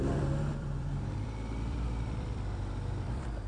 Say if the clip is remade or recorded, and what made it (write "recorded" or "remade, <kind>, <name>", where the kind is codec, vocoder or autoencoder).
remade, vocoder, BigVGAN v2